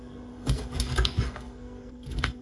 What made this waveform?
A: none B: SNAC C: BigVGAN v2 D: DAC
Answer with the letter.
B